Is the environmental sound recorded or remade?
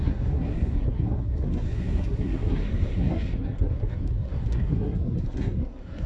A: remade